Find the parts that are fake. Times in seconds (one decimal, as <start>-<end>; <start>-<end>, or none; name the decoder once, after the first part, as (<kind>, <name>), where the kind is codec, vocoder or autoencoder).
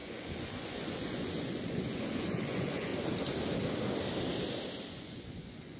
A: 0.0-2.9 (vocoder, Vocos); 4.9-5.8